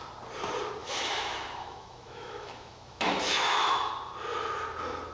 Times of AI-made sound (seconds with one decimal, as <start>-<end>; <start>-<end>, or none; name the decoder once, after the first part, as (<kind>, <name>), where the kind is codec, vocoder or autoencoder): 0.8-3.9 (autoencoder, DAC-VAE)